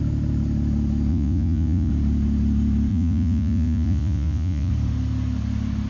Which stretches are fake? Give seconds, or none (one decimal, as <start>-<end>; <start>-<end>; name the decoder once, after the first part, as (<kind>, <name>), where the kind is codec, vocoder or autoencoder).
1.1-1.9 (vocoder, Vocos); 2.9-4.7